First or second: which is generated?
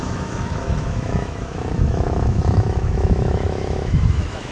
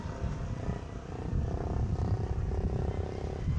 first